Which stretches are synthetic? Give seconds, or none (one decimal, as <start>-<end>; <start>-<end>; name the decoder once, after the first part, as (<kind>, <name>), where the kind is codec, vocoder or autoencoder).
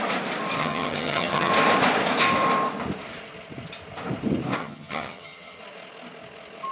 0.6-1.5 (vocoder, HiFi-GAN); 4.6-5.6